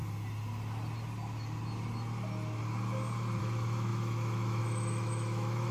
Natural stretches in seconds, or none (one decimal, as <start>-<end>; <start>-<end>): 0.0-3.4